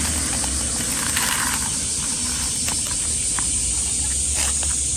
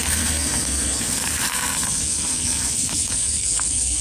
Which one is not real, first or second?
second